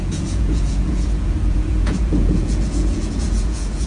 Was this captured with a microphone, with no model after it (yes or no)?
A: no